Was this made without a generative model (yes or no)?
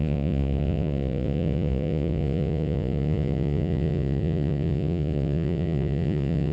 no